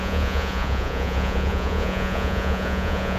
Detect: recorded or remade remade